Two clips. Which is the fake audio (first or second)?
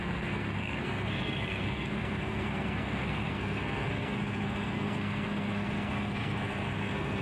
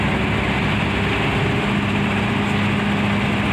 first